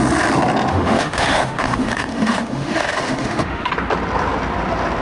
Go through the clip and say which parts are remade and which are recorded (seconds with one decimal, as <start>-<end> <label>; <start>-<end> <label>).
0.0-0.7 recorded; 0.7-3.7 remade; 3.7-5.0 recorded